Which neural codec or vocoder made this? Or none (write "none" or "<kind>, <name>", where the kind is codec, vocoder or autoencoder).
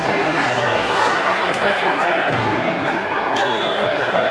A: codec, SNAC